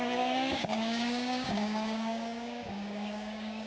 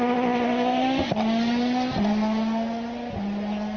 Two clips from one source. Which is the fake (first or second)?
first